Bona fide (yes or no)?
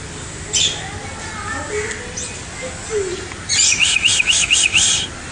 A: yes